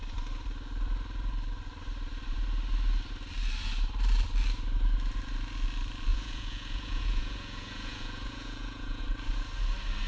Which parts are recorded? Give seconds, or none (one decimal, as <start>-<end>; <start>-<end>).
0.0-6.1; 9.0-10.1